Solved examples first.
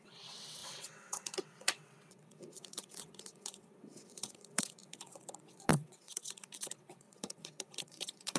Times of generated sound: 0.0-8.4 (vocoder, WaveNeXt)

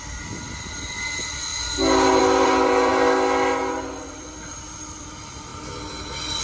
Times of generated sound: 0.0-1.5 (vocoder, BigVGAN v2); 2.2-2.9; 4.1-5.5

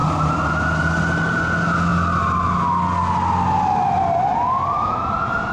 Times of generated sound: none

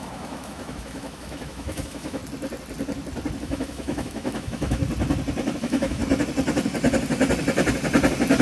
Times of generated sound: 0.0-2.2 (autoencoder, DAC-VAE); 3.4-4.8; 5.6-6.0

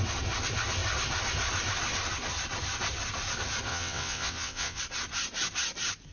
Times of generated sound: 3.7-4.8 (vocoder, WaveNeXt)

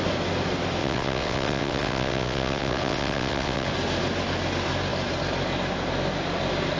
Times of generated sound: 0.8-3.7 (vocoder, WaveNeXt)

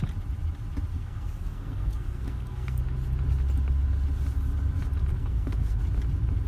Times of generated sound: 0.9-2.8 (codec, SNAC); 5.1-5.8